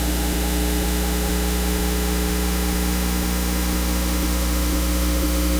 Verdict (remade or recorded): remade